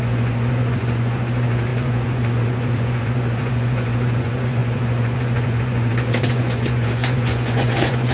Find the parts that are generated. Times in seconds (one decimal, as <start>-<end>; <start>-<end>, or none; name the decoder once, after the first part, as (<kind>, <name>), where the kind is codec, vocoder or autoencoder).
0.0-8.1 (vocoder, Vocos)